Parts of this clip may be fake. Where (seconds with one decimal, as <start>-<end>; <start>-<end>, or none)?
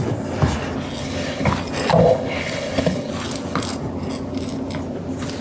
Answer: 1.0-1.5; 2.0-3.1